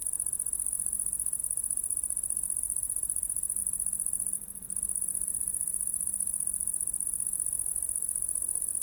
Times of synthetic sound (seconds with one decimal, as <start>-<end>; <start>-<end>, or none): 0.0-8.8